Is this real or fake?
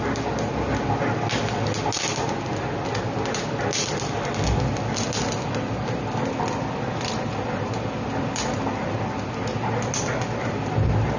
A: real